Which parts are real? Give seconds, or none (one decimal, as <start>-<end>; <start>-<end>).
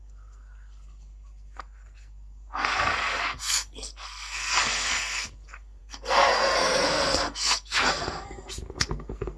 none